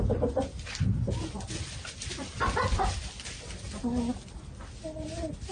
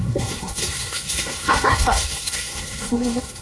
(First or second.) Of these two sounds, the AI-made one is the second